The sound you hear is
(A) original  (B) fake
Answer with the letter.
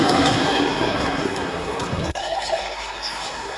B